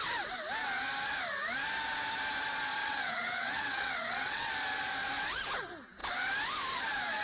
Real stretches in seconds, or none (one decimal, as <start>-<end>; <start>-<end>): 0.0-2.8; 4.5-7.2